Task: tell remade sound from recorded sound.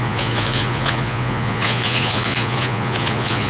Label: remade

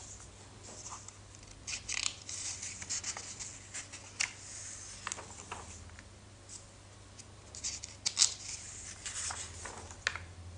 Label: recorded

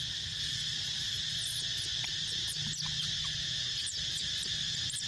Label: recorded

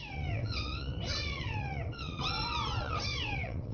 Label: remade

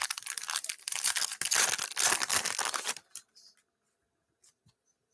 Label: recorded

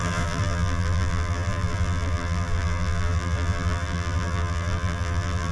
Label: remade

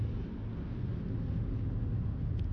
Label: recorded